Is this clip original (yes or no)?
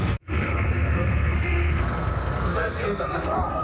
no